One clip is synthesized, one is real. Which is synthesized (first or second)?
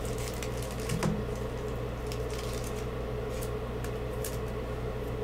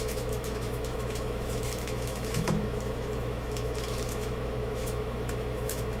second